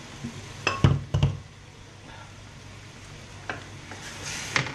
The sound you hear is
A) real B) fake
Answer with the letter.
A